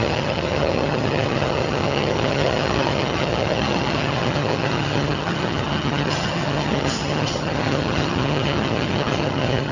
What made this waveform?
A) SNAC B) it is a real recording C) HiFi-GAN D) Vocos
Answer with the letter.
C